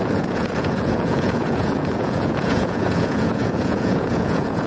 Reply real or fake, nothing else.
fake